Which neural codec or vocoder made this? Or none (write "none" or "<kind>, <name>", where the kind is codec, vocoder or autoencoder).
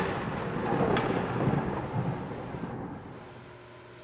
none